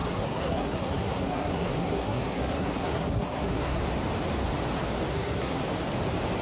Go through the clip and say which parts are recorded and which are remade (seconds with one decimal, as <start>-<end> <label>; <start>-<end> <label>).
0.0-3.8 remade; 3.8-5.1 recorded; 5.1-5.6 remade; 5.6-6.4 recorded